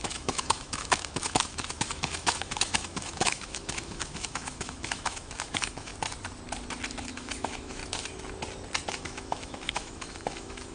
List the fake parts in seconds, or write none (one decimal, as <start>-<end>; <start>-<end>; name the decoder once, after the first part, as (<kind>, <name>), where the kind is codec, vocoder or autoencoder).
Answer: 0.0-5.9 (autoencoder, DAC-VAE); 7.1-7.8; 8.9-10.7

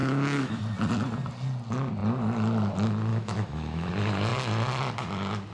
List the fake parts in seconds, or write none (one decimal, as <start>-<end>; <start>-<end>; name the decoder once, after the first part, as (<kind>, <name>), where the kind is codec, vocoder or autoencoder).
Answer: 0.0-0.6 (autoencoder, DAC-VAE); 3.1-3.9

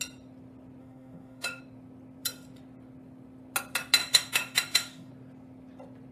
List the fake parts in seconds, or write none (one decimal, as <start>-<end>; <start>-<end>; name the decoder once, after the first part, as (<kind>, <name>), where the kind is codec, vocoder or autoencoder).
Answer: 0.8-1.6 (autoencoder, DAC-VAE); 4.0-5.1

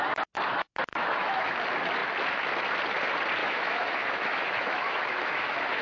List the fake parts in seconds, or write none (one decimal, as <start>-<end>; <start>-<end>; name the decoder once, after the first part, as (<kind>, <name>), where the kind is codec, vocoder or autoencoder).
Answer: 0.9-1.5 (autoencoder, DAC-VAE); 3.4-5.8

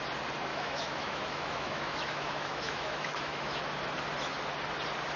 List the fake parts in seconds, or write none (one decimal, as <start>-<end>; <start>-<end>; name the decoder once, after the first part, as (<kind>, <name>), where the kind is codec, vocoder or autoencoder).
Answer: 0.5-3.6 (autoencoder, DAC-VAE)

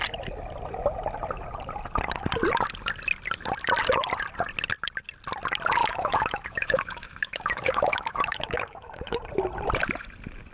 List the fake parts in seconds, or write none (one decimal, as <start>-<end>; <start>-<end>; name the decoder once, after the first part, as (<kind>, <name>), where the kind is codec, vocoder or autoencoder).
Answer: 5.8-9.2 (autoencoder, DAC-VAE)

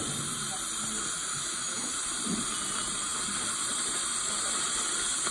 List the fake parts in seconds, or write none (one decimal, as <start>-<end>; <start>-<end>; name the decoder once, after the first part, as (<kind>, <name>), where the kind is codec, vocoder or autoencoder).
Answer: 1.3-1.9 (autoencoder, DAC-VAE)